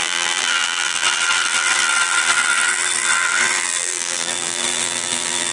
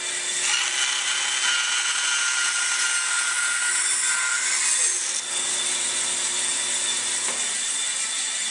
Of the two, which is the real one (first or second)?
second